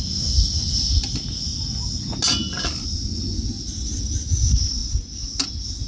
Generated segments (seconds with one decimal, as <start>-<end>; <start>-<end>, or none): none

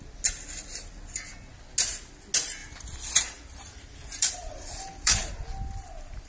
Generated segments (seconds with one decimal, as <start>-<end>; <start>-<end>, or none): 2.6-5.3

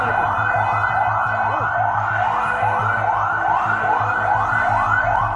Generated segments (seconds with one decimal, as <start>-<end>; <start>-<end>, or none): none

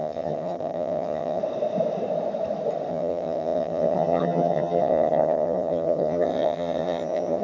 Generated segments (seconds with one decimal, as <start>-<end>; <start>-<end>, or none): 0.0-1.4; 2.9-7.4